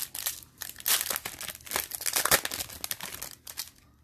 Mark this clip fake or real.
real